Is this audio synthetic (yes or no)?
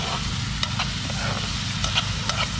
no